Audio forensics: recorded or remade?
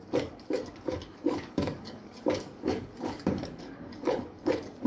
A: remade